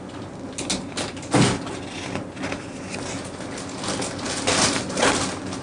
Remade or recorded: recorded